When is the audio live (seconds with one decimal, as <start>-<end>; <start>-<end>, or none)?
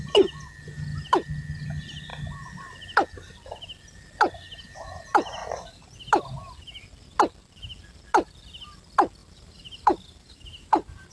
0.0-9.2